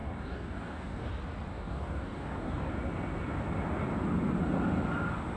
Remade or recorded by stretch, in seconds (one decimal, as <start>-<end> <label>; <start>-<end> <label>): 0.0-1.1 remade; 1.1-1.5 recorded; 1.5-2.7 remade; 2.7-5.4 recorded